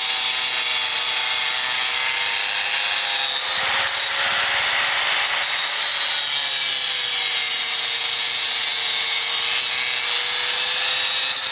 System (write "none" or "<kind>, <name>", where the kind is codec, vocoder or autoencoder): none